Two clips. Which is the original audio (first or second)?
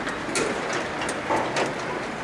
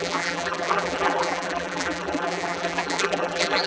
first